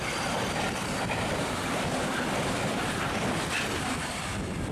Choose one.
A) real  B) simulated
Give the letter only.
B